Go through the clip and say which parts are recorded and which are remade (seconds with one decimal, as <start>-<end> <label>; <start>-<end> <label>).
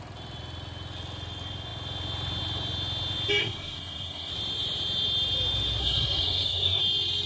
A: 0.0-3.4 recorded; 3.4-4.3 remade; 4.3-5.8 recorded; 5.8-6.8 remade; 6.8-7.3 recorded